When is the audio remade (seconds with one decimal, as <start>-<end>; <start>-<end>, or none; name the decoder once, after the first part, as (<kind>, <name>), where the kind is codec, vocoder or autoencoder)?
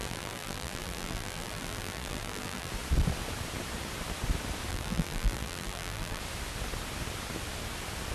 0.0-2.7 (vocoder, BigVGAN v2); 4.7-6.2